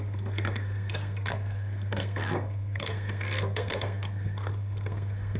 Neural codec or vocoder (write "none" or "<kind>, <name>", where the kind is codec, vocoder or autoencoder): codec, SNAC